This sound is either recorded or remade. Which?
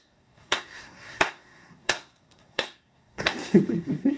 remade